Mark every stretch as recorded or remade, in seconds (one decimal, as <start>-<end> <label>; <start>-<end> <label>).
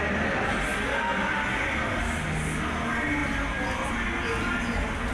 0.0-5.1 recorded